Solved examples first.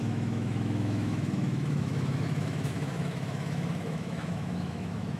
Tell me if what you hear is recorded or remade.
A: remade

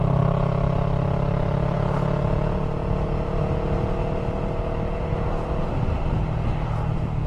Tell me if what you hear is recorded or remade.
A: recorded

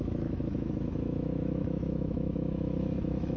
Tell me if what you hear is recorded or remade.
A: remade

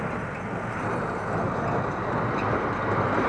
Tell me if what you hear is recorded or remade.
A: recorded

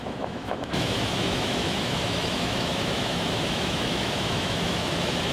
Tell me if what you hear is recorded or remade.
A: remade